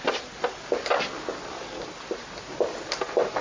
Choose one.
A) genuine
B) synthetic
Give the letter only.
A